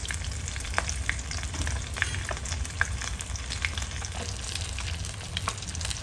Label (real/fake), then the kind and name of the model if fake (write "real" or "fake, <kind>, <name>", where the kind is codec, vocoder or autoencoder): real